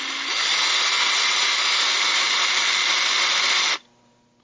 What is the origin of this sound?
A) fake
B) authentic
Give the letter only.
B